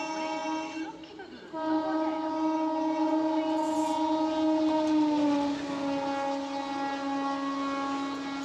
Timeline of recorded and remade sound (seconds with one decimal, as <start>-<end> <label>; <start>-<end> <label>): 0.0-8.4 recorded